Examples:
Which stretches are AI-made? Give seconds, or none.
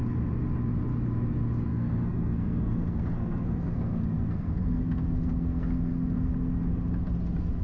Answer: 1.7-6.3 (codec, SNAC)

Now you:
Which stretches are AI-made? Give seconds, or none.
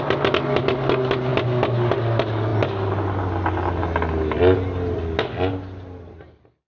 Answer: none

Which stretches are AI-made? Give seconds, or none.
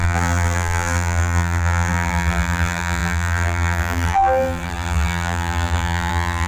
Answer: 0.0-6.5 (vocoder, BigVGAN v2)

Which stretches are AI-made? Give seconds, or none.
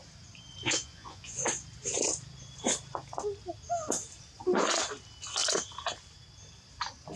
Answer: 0.6-1.4 (vocoder, Vocos)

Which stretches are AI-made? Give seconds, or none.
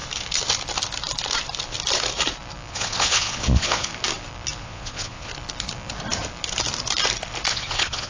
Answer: 2.7-3.9 (vocoder, Vocos); 4.6-5.3; 7.5-8.1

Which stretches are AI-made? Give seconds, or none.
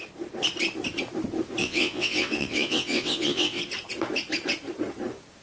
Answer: 1.6-3.6 (vocoder, WaveNeXt)